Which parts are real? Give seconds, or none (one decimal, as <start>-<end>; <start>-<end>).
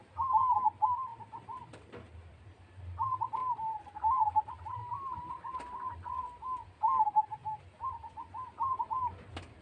0.0-1.1; 2.6-3.4; 5.3-9.6